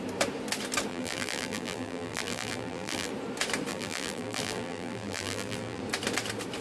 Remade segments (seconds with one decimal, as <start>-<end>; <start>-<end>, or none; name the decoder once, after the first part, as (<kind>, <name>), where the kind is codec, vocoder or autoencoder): 0.9-3.1 (vocoder, BigVGAN v2); 3.7-5.8